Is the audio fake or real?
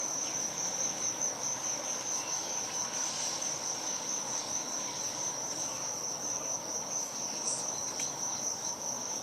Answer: fake